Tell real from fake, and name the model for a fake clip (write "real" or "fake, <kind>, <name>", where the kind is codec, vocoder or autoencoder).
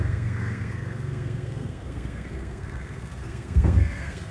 fake, codec, SNAC